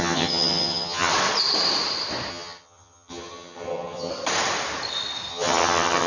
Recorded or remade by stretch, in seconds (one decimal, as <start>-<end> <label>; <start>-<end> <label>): 0.0-1.1 remade; 1.1-2.3 recorded; 2.3-4.1 remade; 4.1-5.3 recorded; 5.3-6.1 remade